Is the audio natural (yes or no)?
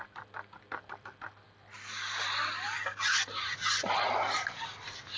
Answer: yes